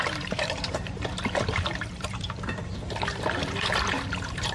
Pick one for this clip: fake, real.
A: fake